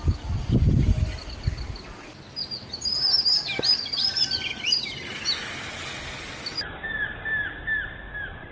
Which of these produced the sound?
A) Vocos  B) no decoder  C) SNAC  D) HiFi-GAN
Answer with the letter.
B